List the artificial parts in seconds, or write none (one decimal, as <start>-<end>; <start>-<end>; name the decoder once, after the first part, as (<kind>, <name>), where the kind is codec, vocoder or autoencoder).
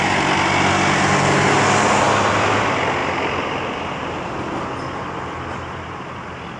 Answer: none